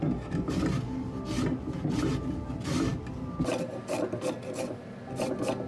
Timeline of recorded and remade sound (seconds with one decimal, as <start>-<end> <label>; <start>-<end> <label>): 0.0-5.7 recorded